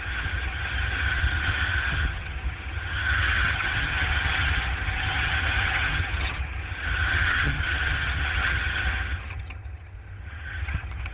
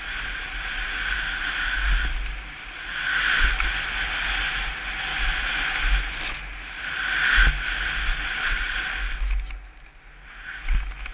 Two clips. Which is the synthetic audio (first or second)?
first